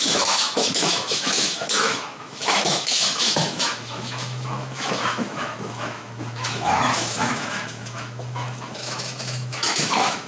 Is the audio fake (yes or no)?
yes